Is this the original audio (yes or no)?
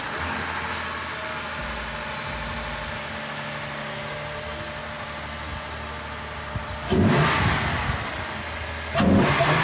yes